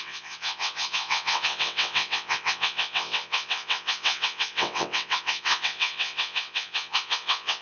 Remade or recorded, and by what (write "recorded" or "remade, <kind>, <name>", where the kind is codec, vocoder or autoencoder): remade, vocoder, WaveNeXt